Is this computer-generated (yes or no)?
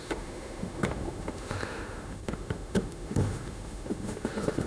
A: yes